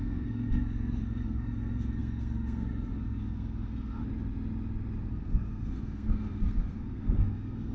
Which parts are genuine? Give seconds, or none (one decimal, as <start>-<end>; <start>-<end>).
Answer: 4.0-5.1